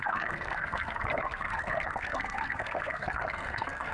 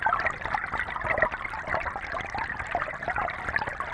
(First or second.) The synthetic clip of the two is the first